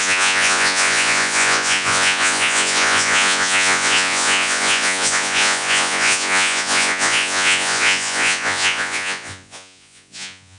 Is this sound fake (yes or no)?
yes